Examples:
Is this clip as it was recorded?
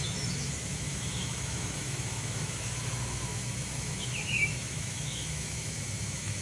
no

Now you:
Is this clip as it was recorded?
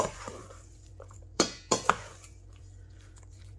no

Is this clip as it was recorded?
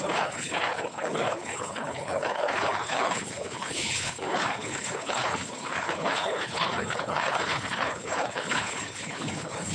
no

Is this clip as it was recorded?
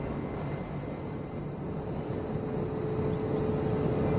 yes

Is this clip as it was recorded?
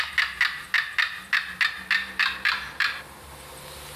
yes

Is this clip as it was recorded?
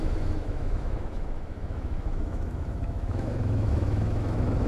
no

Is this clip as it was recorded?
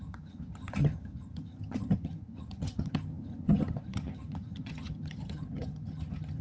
no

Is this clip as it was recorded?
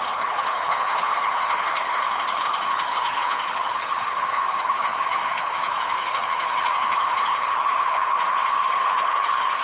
no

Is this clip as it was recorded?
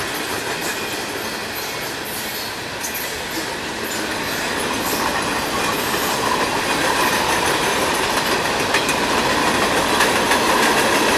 yes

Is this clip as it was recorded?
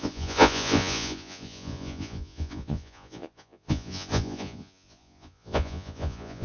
no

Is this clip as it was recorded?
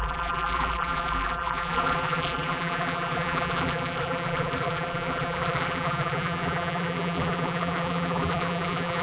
no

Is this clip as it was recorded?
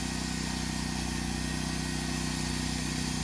yes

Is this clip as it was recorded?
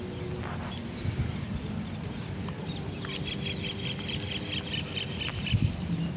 no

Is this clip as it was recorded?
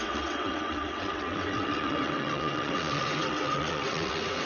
no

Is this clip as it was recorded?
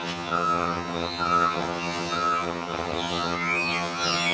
no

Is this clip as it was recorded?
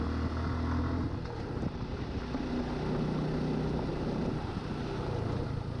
yes